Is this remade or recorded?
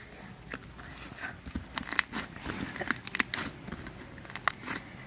recorded